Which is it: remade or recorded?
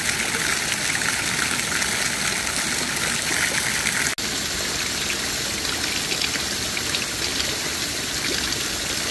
recorded